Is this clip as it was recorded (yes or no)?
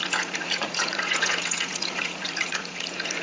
no